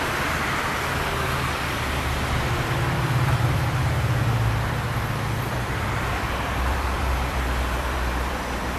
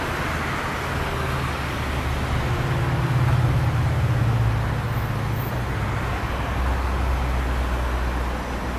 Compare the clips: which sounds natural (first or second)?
second